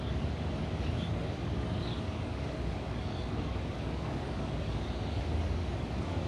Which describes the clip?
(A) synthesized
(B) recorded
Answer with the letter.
A